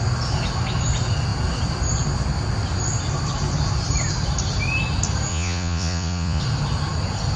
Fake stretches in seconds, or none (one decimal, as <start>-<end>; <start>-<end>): 5.3-6.4